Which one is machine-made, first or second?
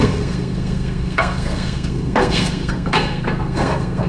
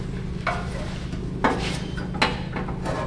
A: first